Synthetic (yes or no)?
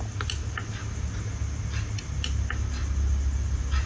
no